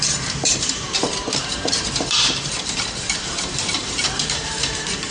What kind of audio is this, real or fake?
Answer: fake